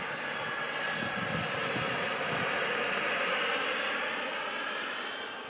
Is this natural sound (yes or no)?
yes